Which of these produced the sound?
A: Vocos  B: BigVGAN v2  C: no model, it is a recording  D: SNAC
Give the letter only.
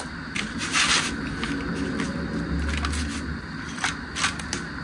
C